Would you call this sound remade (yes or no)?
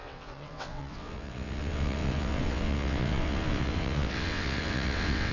yes